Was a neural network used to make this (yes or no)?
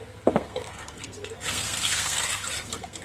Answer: yes